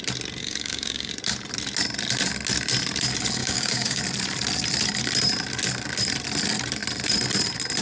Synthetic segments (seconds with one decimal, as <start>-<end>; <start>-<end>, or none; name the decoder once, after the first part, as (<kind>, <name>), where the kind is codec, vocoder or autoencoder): 0.4-1.1 (codec, DAC); 3.4-4.0